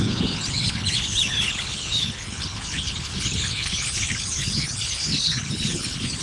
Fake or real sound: fake